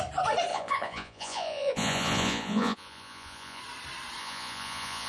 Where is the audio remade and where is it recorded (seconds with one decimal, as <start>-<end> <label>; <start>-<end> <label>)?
0.0-0.5 recorded; 0.5-3.6 remade; 3.6-4.2 recorded; 4.2-5.1 remade